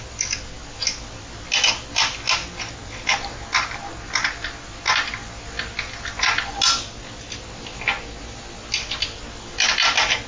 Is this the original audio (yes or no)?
yes